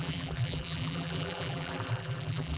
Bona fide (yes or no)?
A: no